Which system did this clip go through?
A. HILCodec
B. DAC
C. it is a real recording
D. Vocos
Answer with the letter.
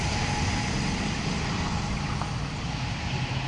C